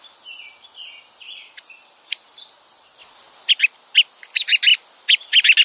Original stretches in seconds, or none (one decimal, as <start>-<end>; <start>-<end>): 0.0-5.6